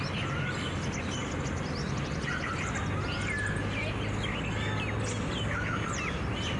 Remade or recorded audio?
recorded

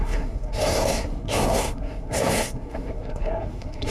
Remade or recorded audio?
remade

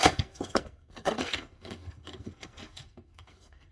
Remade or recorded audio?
remade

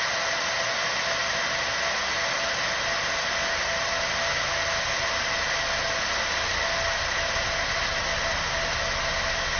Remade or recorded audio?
recorded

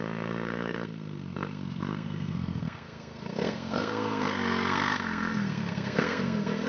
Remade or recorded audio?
remade